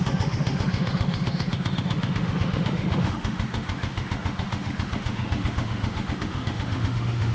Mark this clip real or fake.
fake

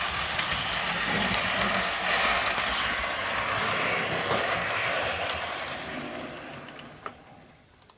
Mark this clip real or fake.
real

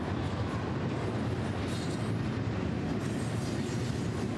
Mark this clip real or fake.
real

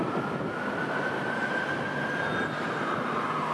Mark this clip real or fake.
real